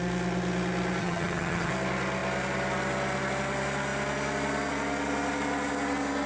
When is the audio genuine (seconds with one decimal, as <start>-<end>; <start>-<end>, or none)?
0.0-1.0; 1.7-6.3